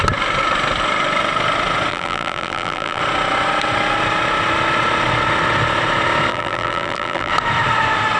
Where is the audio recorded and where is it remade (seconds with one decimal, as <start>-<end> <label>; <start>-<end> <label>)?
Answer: 0.0-1.9 recorded; 1.9-3.0 remade; 3.0-6.3 recorded; 6.3-7.3 remade; 7.3-8.2 recorded